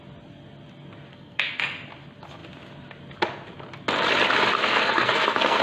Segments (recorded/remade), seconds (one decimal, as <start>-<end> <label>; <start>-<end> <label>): 0.0-1.1 recorded; 1.1-1.6 remade; 1.6-4.6 recorded; 4.6-5.6 remade